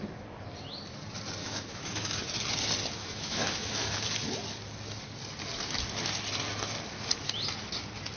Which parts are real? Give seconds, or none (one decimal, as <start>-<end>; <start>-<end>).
0.0-1.4; 2.3-3.0; 4.0-8.2

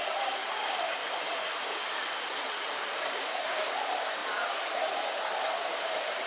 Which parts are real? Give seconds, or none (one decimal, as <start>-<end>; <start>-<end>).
0.0-6.3

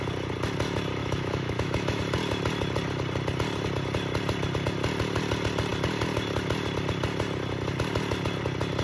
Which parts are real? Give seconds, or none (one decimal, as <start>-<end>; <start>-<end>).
0.0-1.0; 2.0-8.8

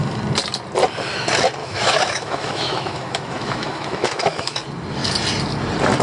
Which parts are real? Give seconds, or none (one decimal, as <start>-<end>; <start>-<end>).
0.0-1.6; 4.6-6.0

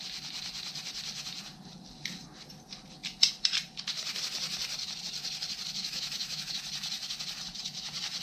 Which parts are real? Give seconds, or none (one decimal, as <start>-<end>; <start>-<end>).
0.0-5.8; 6.5-8.2